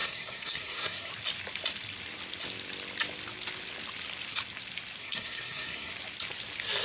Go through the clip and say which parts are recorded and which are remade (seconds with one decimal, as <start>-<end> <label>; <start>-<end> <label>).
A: 0.0-1.1 remade; 1.1-5.0 recorded; 5.0-5.9 remade; 5.9-6.8 recorded